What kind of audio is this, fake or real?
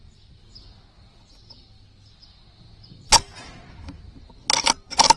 real